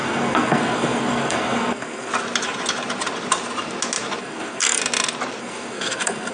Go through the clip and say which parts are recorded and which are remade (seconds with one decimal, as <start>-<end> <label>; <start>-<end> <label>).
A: 0.0-2.1 remade; 2.1-4.2 recorded; 4.2-4.8 remade; 4.8-5.4 recorded; 5.4-6.3 remade